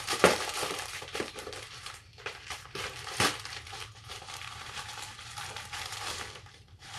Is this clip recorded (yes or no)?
no